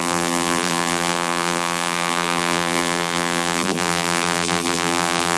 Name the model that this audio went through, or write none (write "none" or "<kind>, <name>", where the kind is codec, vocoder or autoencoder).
vocoder, BigVGAN v2